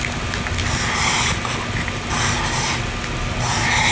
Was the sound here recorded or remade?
recorded